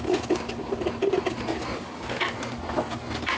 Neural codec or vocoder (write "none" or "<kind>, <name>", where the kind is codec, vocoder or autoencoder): none